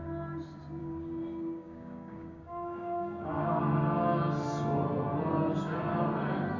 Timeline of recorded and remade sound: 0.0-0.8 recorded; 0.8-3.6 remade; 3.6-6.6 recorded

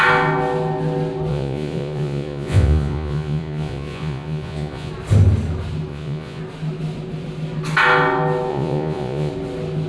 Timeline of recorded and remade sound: 0.0-1.3 recorded; 1.3-4.9 remade; 4.9-5.9 recorded; 5.9-6.4 remade; 6.4-8.5 recorded; 8.5-9.3 remade; 9.3-9.9 recorded

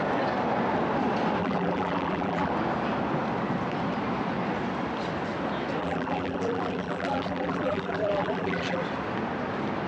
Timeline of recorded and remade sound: 0.0-1.4 recorded; 1.4-2.5 remade; 2.5-5.8 recorded; 5.8-8.8 remade; 8.8-9.9 recorded

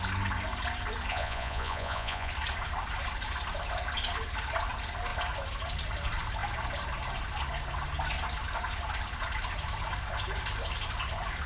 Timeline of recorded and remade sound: 0.0-1.1 recorded; 1.1-2.3 remade; 2.3-11.5 recorded

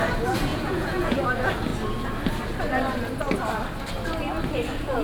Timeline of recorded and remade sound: 0.0-0.5 recorded; 0.5-1.2 remade; 1.2-5.0 recorded